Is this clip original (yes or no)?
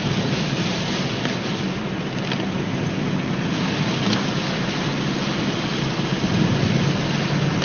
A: yes